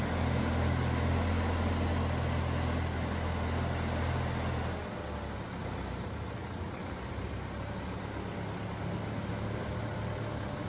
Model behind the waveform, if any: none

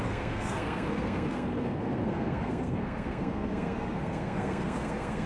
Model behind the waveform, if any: codec, SNAC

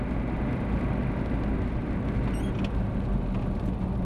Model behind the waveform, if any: none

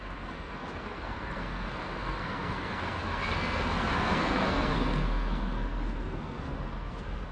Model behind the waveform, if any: codec, SNAC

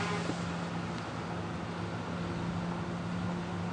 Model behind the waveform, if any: none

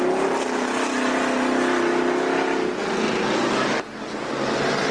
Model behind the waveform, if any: none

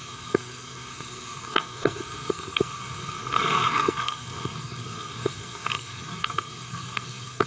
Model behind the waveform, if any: codec, SNAC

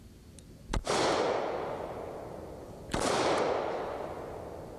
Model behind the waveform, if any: none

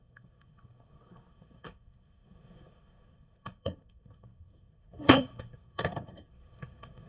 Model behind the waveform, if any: codec, SNAC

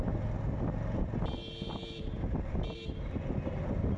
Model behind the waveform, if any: none